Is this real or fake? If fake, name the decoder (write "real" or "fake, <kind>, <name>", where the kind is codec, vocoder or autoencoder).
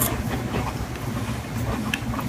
real